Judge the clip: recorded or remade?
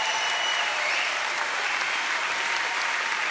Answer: remade